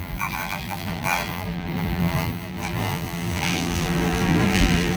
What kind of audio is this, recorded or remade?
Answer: remade